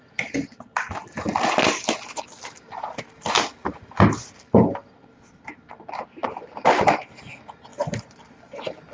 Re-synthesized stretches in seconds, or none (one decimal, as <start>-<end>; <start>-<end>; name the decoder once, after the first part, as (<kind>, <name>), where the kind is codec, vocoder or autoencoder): none